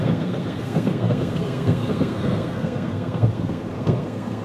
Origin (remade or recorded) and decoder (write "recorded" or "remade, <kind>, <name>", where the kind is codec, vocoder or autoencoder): remade, codec, SNAC